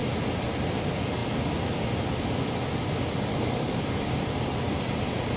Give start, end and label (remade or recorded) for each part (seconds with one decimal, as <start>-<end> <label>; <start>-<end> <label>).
0.0-3.3 recorded; 3.3-3.8 remade; 3.8-5.4 recorded